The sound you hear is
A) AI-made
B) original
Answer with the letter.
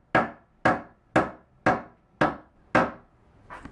B